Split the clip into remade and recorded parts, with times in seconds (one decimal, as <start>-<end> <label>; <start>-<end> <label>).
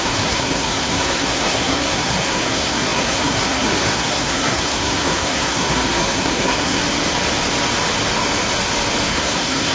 0.0-6.8 remade; 6.8-9.1 recorded; 9.1-9.7 remade